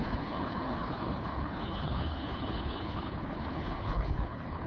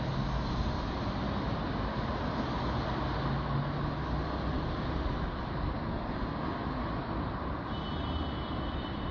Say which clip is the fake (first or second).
first